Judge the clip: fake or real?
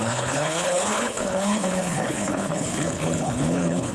fake